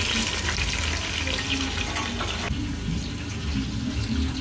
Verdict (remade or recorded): recorded